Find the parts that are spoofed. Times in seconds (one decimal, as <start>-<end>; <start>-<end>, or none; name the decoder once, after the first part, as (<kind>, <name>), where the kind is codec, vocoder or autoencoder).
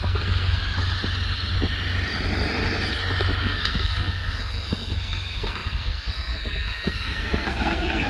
0.0-0.6 (codec, SNAC); 3.4-8.1